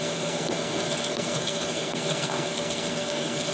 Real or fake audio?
fake